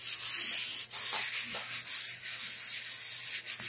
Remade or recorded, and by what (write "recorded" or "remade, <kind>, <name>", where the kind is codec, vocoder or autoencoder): recorded